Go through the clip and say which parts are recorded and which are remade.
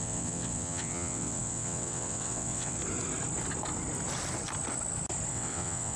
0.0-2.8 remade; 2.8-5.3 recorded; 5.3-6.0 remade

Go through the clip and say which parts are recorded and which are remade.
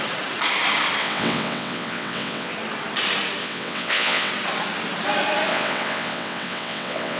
0.0-1.0 recorded; 1.0-2.5 remade; 2.5-3.4 recorded; 3.4-4.3 remade; 4.3-5.5 recorded; 5.5-7.2 remade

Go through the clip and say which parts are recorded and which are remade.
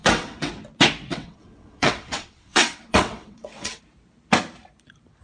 0.0-0.5 remade; 0.5-1.1 recorded; 1.1-3.8 remade; 3.8-5.2 recorded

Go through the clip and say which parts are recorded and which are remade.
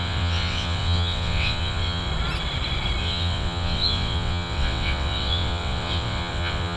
0.0-2.1 remade; 2.1-3.0 recorded; 3.0-6.8 remade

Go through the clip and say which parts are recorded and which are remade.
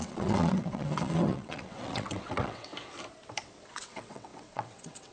0.0-2.7 remade; 2.7-3.6 recorded; 3.6-5.1 remade